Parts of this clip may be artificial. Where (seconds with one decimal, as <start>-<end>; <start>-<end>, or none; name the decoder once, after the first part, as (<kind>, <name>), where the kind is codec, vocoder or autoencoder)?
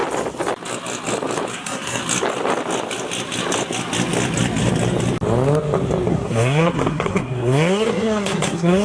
1.5-2.0 (codec, SNAC); 6.1-8.8